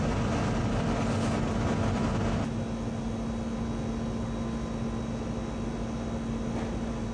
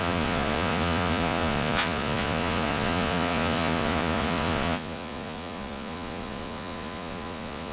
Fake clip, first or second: second